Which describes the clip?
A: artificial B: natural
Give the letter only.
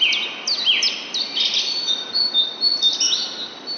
B